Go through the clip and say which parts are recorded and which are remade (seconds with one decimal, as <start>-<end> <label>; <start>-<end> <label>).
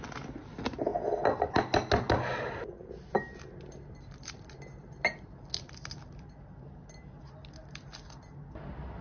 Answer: 0.0-9.0 recorded